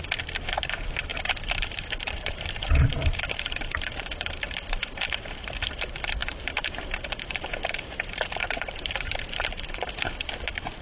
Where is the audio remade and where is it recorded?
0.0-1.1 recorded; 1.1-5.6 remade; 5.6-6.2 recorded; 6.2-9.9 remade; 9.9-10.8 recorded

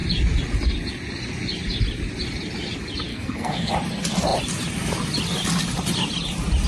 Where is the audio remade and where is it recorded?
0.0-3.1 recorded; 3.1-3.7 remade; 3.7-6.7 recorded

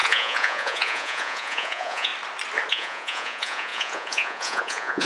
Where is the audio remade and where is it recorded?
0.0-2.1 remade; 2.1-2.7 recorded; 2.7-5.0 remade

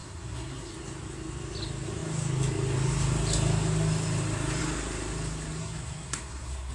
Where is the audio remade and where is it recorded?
0.0-0.7 remade; 0.7-5.6 recorded; 5.6-6.7 remade